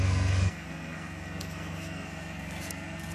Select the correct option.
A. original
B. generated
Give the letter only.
B